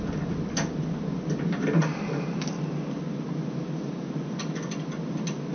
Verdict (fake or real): real